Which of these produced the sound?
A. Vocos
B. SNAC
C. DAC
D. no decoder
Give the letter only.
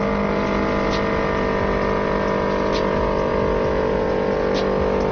D